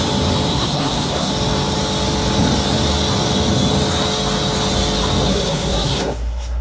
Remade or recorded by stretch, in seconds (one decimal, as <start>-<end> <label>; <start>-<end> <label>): 0.0-0.5 recorded; 0.5-1.3 remade; 1.3-5.3 recorded; 5.3-6.6 remade